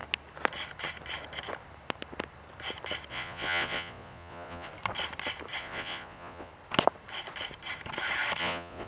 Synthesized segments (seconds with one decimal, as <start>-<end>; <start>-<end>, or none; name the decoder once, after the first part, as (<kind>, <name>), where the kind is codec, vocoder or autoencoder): 3.1-4.7 (vocoder, Vocos); 5.6-6.5; 8.4-8.9